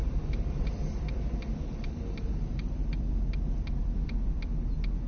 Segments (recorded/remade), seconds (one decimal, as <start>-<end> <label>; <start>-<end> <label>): 0.0-3.1 remade; 3.1-3.8 recorded; 3.8-4.4 remade; 4.4-5.1 recorded